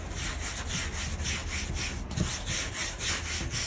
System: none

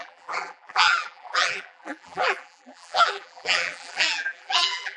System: vocoder, BigVGAN v2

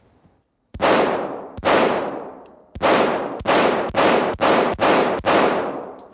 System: vocoder, BigVGAN v2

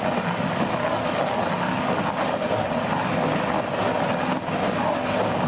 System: none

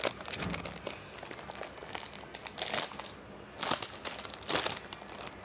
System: none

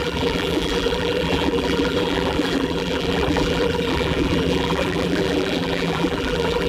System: vocoder, BigVGAN v2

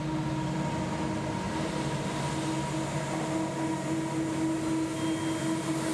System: none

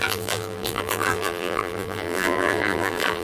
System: vocoder, BigVGAN v2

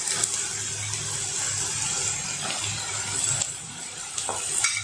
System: none